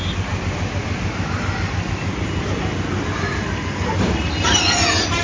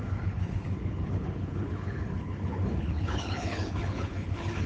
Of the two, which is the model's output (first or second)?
second